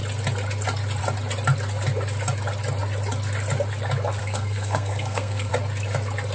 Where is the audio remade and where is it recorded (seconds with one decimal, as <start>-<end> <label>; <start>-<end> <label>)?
0.0-4.2 recorded; 4.2-5.5 remade; 5.5-6.3 recorded